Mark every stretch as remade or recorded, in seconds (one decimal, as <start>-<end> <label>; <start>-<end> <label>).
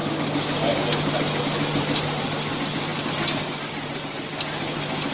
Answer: 0.0-5.1 recorded